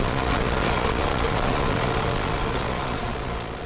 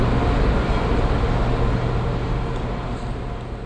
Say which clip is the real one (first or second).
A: second